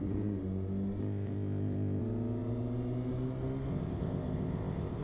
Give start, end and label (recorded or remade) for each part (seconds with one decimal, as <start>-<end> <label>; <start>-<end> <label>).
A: 0.0-1.0 recorded; 1.0-2.0 remade; 2.0-3.7 recorded; 3.7-5.0 remade